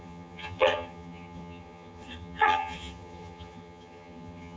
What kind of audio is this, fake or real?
fake